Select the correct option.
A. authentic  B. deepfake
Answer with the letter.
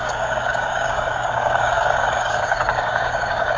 B